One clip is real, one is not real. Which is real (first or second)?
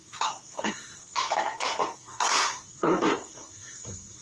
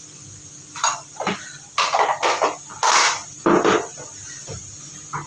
second